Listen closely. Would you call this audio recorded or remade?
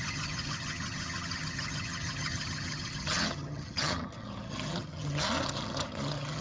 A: remade